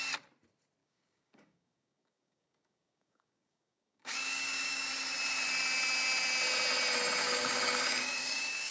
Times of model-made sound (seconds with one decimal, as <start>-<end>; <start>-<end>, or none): 0.8-4.9; 7.2-8.7